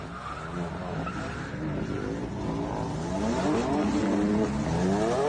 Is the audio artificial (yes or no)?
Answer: no